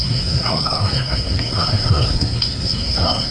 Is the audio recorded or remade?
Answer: remade